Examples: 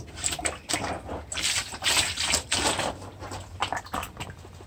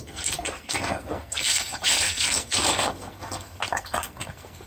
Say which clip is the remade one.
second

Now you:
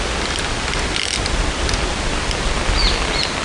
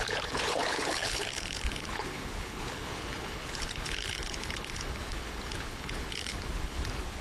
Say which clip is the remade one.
second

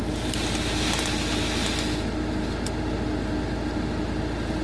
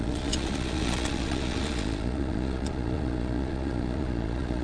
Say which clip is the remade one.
second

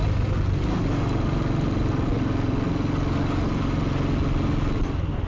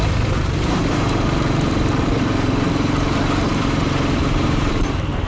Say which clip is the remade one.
second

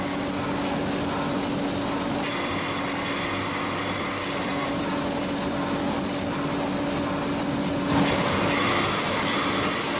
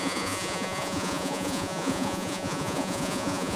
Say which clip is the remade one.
second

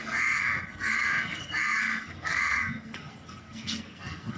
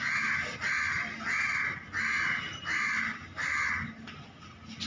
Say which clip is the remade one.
first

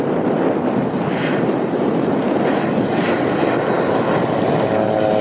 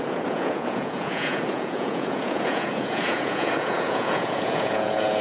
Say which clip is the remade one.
second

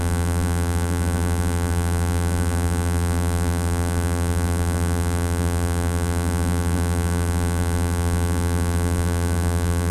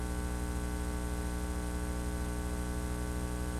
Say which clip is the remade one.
first